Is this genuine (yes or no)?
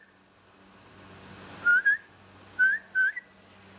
yes